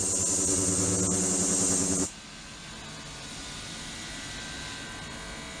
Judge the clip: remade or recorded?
recorded